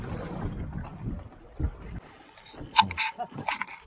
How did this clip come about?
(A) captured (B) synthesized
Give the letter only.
A